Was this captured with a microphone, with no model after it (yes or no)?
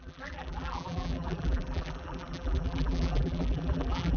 no